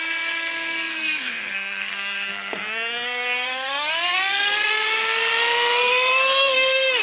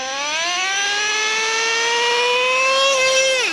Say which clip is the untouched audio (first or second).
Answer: second